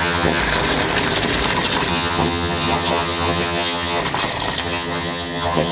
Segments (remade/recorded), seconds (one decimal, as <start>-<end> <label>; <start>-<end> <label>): 0.0-0.4 remade; 0.4-1.9 recorded; 1.9-4.0 remade; 4.0-4.6 recorded; 4.6-5.7 remade

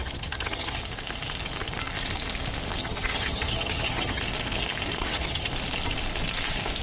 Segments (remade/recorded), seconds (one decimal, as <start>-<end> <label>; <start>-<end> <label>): 0.0-0.8 remade; 0.8-2.8 recorded; 2.8-4.2 remade; 4.2-5.0 recorded; 5.0-5.5 remade; 5.5-6.8 recorded

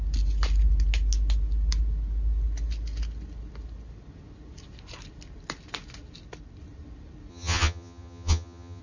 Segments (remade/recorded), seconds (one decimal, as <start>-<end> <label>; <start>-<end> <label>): 0.0-7.3 recorded; 7.3-8.8 remade

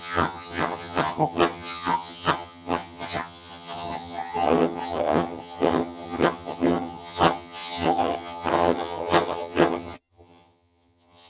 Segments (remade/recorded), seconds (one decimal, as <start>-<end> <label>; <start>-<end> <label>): 0.0-11.3 remade

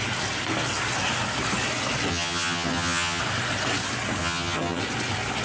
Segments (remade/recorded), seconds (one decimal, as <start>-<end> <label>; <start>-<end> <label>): 0.0-2.1 recorded; 2.1-3.2 remade; 3.2-4.2 recorded; 4.2-4.8 remade; 4.8-5.4 recorded

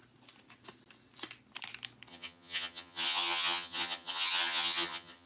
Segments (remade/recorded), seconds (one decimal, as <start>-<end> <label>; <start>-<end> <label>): 0.0-2.1 recorded; 2.1-5.3 remade